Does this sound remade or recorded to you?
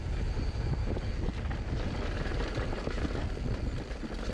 recorded